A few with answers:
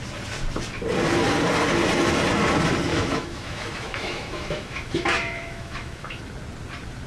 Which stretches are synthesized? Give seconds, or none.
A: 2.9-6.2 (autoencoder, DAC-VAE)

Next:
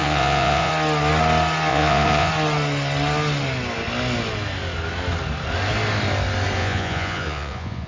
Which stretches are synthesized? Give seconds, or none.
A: 0.0-0.7 (vocoder, Vocos); 1.7-2.3; 6.6-7.9

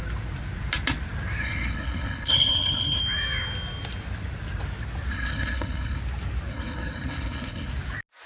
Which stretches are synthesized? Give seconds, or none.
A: 1.4-3.0 (codec, HILCodec); 5.1-6.0; 6.5-7.7

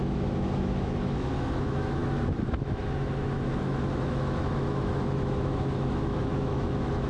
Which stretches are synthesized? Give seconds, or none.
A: 0.0-7.1 (autoencoder, DAC-VAE)

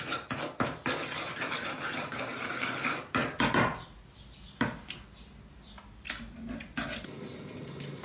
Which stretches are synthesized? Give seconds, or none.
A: none

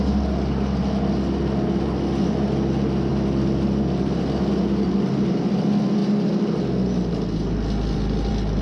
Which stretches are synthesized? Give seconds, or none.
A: none

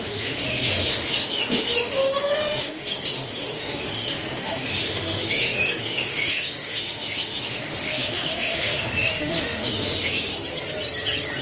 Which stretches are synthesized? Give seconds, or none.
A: 0.0-10.4 (autoencoder, DAC-VAE)